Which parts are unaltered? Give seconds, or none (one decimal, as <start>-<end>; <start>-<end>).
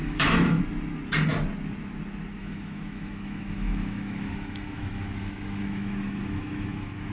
0.6-2.4